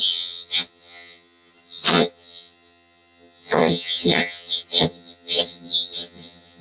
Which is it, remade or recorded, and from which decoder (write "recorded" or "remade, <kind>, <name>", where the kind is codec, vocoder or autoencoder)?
remade, vocoder, HiFi-GAN